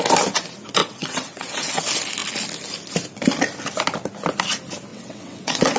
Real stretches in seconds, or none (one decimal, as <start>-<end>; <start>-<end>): 0.0-0.8; 1.8-4.9